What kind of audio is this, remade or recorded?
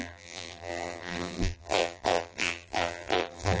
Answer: remade